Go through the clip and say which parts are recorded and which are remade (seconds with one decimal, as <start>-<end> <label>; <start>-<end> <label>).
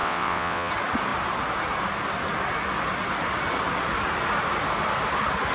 0.0-0.7 remade; 0.7-5.5 recorded